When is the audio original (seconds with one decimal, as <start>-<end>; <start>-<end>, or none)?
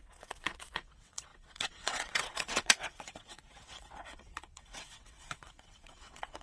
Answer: none